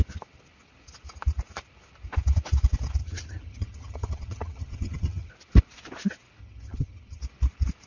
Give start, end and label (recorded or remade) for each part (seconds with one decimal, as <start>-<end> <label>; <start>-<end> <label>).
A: 0.0-3.0 recorded; 3.0-5.3 remade; 5.3-6.4 recorded; 6.4-7.2 remade; 7.2-7.9 recorded